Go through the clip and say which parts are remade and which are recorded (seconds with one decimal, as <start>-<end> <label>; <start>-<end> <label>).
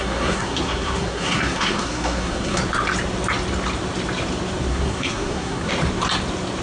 0.0-2.6 remade; 2.6-4.7 recorded; 4.7-5.7 remade; 5.7-6.6 recorded